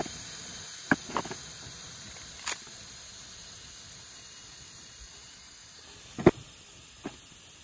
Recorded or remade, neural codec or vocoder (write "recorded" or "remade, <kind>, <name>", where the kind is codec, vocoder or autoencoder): recorded